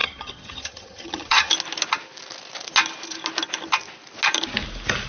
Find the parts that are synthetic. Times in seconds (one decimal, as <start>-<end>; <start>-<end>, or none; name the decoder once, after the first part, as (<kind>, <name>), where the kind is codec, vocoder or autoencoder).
0.0-1.5 (vocoder, HiFi-GAN)